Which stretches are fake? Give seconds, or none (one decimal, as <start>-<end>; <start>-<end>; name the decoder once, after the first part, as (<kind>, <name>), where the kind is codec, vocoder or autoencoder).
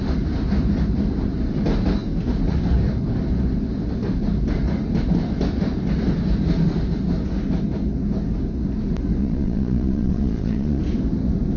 9.2-10.8 (vocoder, Vocos)